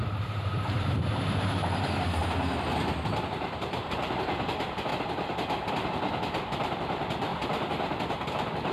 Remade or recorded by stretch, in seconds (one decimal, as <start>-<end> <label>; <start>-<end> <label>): 0.0-2.2 remade; 2.2-3.2 recorded; 3.2-4.9 remade; 4.9-5.7 recorded; 5.7-7.3 remade; 7.3-8.1 recorded; 8.1-8.7 remade